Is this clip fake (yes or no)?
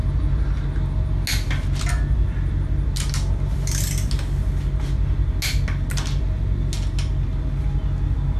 no